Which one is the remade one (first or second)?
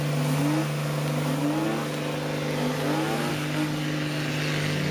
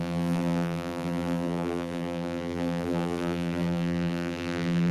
second